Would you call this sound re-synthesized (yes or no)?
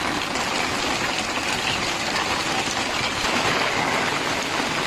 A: no